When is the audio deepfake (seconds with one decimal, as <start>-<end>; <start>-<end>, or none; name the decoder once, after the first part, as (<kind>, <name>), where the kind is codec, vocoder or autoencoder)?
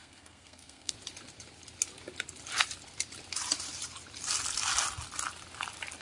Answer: 0.0-0.9 (codec, SNAC)